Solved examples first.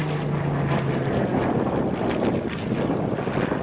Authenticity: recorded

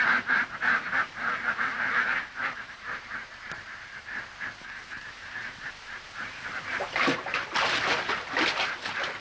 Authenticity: remade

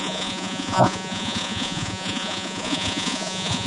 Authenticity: remade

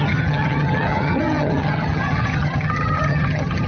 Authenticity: remade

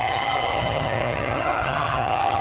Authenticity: remade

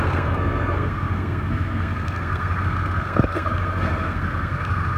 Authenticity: remade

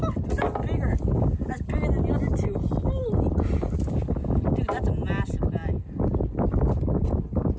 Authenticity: recorded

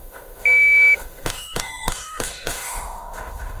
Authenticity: remade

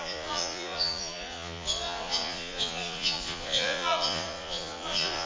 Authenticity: remade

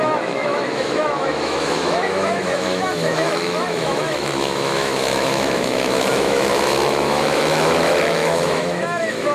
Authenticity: remade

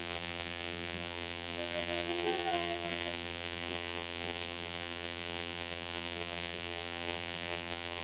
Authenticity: remade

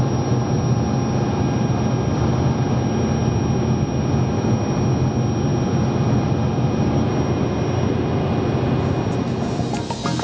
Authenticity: recorded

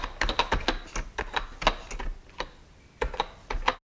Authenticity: recorded